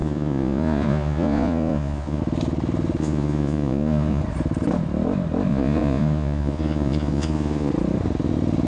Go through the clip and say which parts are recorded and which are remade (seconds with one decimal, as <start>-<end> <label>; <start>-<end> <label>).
0.0-2.2 remade; 2.2-3.0 recorded; 3.0-4.2 remade; 4.2-5.5 recorded; 5.5-7.7 remade; 7.7-8.7 recorded